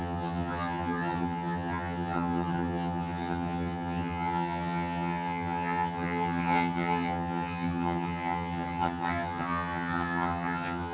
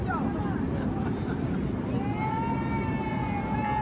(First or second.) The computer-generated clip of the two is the first